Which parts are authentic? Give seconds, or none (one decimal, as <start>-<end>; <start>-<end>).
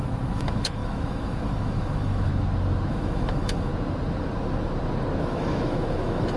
2.3-2.9; 3.7-5.2